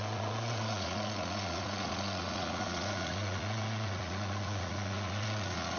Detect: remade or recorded remade